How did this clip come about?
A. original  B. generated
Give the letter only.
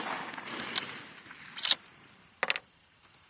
A